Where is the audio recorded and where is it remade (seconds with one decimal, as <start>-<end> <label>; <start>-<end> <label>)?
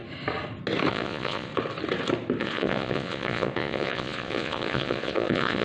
0.0-0.9 recorded; 0.9-1.5 remade; 1.5-2.4 recorded; 2.4-5.6 remade